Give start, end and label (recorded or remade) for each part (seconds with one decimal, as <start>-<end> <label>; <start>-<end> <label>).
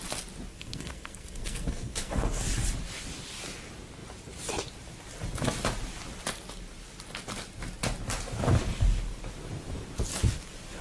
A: 0.0-0.5 recorded; 0.5-2.4 remade; 2.4-10.8 recorded